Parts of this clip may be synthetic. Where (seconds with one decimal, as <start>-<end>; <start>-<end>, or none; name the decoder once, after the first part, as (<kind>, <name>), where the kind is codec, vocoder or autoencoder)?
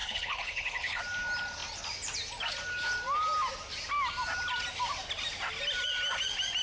0.0-1.0 (codec, HILCodec)